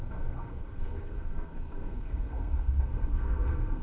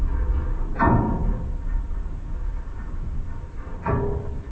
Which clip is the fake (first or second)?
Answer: first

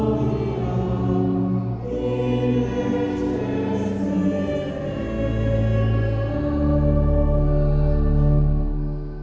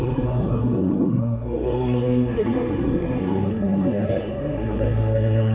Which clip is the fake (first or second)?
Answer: second